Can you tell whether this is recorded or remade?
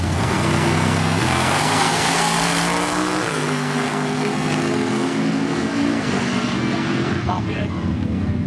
remade